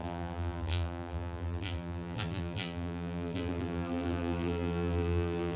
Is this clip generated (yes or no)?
yes